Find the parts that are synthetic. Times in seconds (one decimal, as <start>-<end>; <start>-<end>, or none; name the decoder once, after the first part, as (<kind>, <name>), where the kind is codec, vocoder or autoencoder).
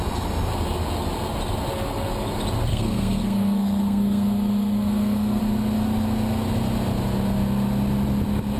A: 2.7-5.4 (codec, SNAC)